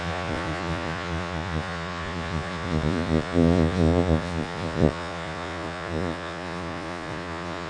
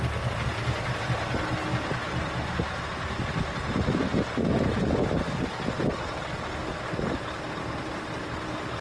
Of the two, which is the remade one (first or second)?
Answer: first